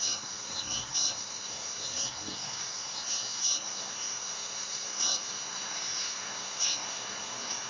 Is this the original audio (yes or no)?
no